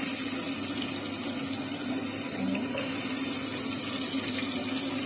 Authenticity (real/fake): real